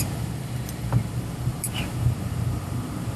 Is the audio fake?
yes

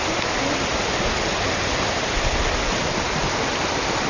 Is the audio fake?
no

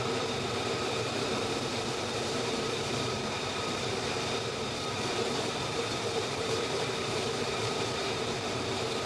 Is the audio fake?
yes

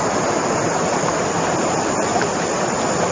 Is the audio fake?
no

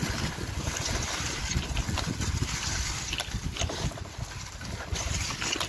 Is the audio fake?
no